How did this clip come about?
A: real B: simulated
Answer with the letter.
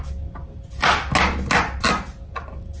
A